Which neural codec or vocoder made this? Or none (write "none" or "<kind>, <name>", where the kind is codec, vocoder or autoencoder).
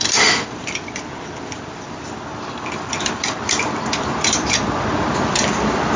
vocoder, BigVGAN v2